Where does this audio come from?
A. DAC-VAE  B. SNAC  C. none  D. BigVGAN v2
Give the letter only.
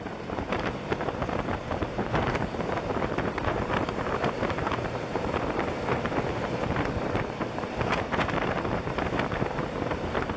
D